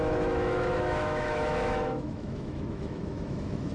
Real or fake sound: fake